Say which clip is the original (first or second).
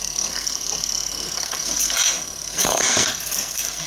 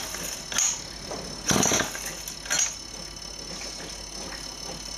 second